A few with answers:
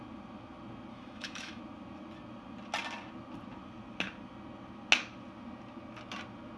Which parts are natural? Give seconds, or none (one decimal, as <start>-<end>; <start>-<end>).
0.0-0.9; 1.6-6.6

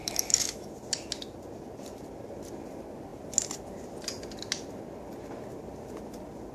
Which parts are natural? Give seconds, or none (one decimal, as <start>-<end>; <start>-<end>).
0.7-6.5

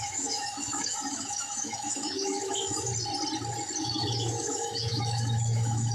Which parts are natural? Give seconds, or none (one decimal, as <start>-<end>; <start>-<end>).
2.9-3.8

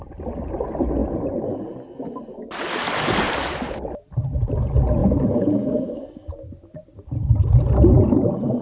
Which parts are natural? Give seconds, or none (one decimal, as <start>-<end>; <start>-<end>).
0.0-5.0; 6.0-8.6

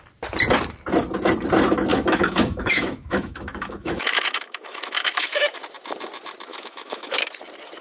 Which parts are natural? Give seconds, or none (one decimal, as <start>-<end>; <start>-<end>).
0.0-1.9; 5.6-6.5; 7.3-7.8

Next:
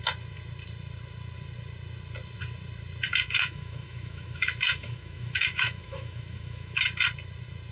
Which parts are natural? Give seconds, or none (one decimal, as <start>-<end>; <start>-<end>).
0.0-3.1; 6.8-7.7

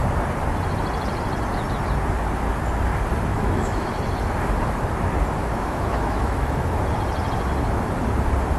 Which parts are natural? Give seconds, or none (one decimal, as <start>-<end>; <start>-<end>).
0.0-3.3; 3.9-5.4; 6.8-8.6

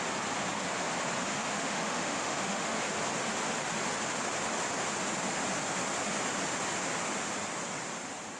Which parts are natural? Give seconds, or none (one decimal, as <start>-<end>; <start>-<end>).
0.0-1.3; 2.8-8.4